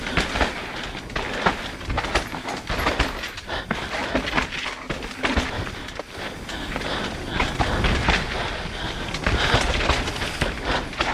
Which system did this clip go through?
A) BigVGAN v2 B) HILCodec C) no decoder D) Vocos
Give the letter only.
C